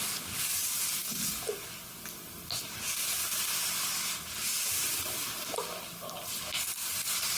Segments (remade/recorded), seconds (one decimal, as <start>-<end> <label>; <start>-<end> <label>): 0.0-7.4 recorded